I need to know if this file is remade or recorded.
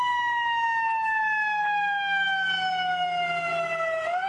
recorded